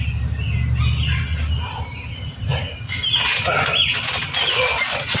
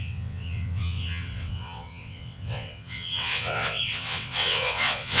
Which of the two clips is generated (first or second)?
second